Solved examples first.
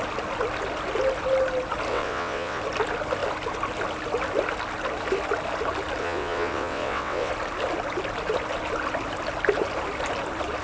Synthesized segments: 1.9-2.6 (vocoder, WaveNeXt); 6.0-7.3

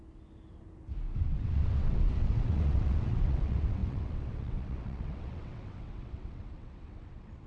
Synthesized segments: 1.2-7.5 (vocoder, WaveNeXt)

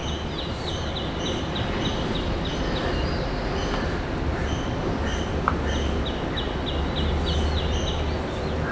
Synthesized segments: none

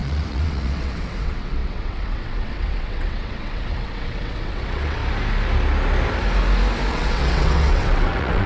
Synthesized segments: 0.0-5.0 (vocoder, WaveNeXt); 6.9-8.5

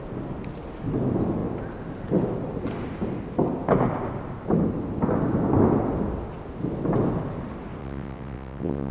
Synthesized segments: 7.8-8.9 (vocoder, WaveNeXt)